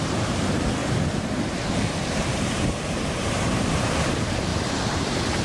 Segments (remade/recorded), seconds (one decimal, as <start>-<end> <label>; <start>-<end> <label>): 0.0-0.8 remade; 0.8-1.7 recorded; 1.7-5.4 remade